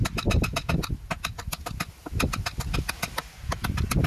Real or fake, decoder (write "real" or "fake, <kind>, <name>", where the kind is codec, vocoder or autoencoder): real